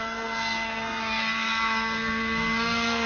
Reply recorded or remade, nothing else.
remade